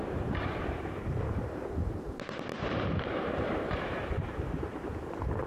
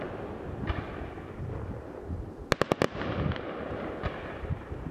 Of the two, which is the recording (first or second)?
second